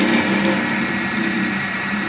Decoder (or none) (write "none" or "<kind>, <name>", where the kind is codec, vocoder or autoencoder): none